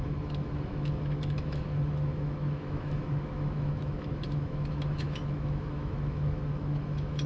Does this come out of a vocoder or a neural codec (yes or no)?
yes